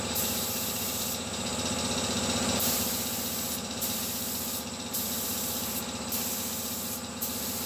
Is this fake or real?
fake